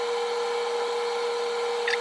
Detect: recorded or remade recorded